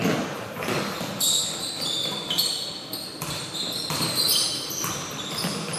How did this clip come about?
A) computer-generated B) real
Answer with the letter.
B